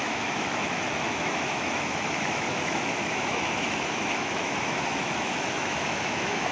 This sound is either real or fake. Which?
fake